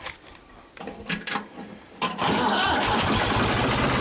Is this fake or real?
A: real